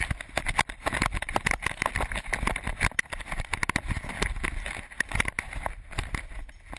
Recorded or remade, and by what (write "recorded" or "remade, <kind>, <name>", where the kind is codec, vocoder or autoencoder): recorded